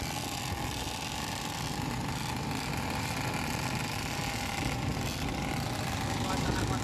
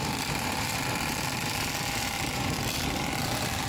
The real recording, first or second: first